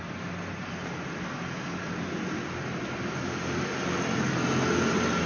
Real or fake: real